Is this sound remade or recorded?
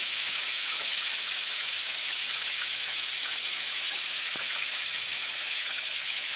remade